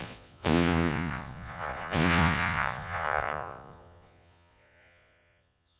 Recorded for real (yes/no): no